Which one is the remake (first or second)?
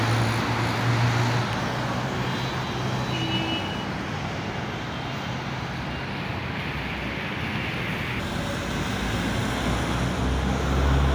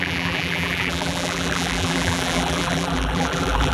second